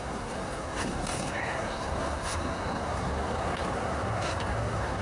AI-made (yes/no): yes